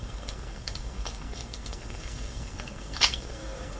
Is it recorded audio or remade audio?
remade